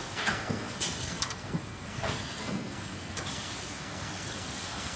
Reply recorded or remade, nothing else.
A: remade